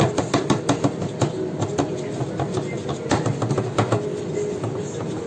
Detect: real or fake real